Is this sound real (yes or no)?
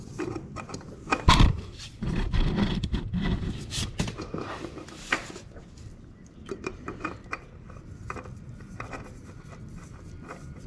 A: no